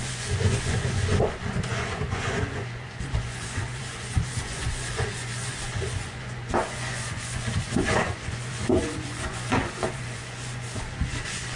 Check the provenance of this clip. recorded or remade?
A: remade